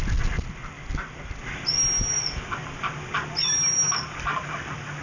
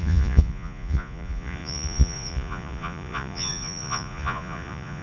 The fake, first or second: second